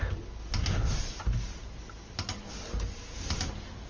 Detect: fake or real real